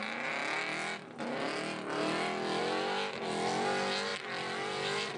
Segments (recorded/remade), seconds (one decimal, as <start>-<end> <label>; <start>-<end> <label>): 0.0-5.2 recorded